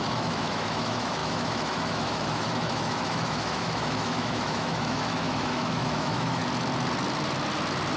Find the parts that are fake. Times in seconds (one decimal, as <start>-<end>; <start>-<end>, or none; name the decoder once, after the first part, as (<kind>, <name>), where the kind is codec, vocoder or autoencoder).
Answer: 0.0-6.4 (autoencoder, DAC-VAE)

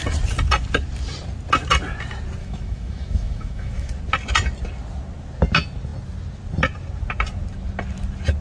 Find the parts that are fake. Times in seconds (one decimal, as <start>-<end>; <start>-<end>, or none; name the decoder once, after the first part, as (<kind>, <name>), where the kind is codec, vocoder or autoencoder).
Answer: 2.4-3.9 (autoencoder, DAC-VAE)

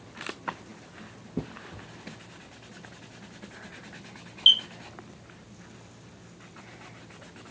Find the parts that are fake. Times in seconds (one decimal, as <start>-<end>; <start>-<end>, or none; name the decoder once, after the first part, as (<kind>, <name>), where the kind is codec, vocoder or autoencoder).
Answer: none

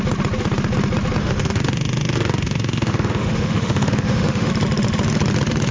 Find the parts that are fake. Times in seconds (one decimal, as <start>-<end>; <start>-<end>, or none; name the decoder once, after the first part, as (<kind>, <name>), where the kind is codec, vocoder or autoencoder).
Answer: 1.2-4.5 (autoencoder, DAC-VAE)

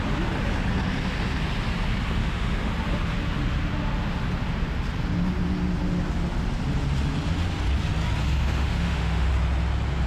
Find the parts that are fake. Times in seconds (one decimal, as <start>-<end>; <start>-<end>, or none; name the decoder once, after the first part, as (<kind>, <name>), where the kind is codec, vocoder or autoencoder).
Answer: 2.2-2.7 (autoencoder, DAC-VAE); 8.2-9.3